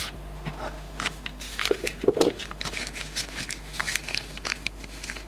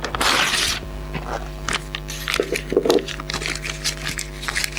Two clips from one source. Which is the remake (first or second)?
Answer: first